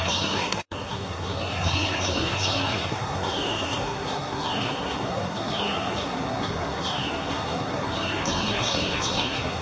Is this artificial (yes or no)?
yes